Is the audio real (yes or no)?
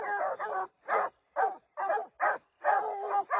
yes